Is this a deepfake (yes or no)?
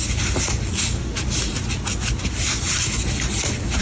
no